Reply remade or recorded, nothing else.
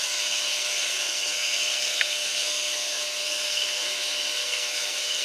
remade